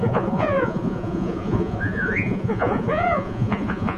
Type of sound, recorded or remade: remade